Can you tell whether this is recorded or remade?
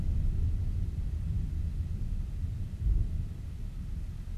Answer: recorded